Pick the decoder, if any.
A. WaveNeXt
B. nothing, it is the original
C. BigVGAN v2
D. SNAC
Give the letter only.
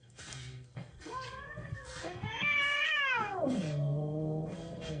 D